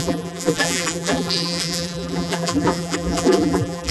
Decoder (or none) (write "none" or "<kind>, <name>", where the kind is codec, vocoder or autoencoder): vocoder, BigVGAN v2